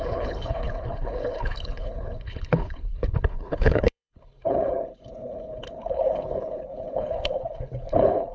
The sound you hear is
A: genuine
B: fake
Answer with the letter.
B